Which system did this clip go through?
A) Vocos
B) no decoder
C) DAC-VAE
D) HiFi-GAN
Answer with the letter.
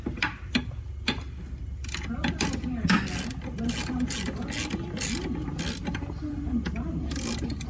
B